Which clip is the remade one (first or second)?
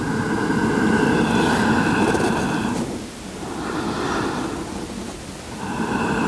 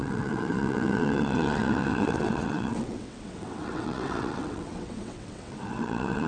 second